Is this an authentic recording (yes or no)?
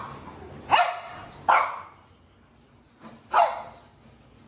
yes